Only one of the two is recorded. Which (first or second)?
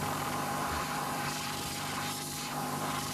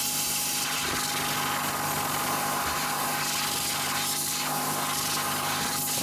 second